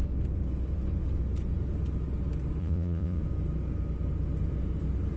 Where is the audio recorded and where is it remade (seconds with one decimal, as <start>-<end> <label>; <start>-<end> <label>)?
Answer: 0.0-2.6 recorded; 2.6-3.2 remade; 3.2-5.2 recorded